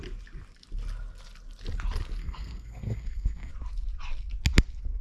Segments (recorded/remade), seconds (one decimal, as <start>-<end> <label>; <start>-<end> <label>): 0.0-2.2 recorded; 2.2-3.5 remade; 3.5-5.0 recorded